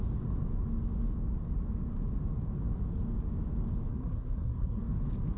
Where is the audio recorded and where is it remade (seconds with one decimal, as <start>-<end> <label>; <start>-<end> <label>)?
0.0-3.9 recorded; 3.9-4.8 remade; 4.8-5.4 recorded